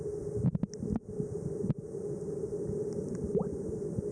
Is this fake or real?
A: real